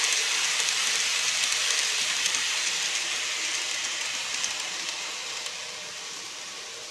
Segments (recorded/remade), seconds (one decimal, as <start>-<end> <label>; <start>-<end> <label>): 0.0-6.9 remade

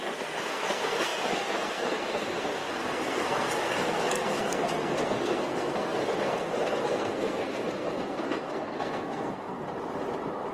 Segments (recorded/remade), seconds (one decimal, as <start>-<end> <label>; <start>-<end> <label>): 0.0-9.6 remade; 9.6-10.5 recorded

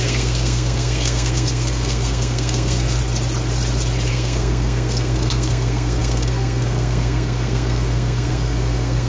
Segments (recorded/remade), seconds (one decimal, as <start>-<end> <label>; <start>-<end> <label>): 0.0-3.0 remade; 3.0-4.1 recorded; 4.1-9.1 remade

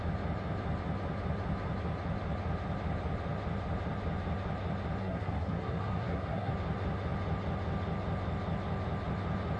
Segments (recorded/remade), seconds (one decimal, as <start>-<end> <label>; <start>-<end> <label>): 0.0-5.0 recorded; 5.0-6.5 remade; 6.5-9.6 recorded

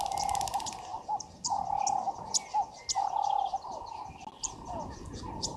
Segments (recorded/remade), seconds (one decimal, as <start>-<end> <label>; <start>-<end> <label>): 0.0-5.6 recorded

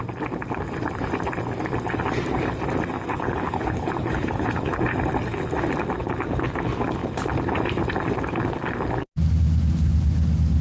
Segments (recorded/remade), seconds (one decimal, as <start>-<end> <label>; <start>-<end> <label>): 0.0-3.1 recorded; 3.1-4.8 remade; 4.8-10.6 recorded